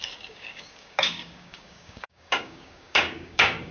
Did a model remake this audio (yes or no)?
yes